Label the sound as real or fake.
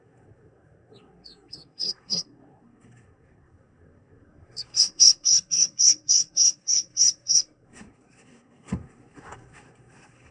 fake